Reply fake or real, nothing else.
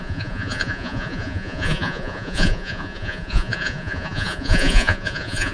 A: fake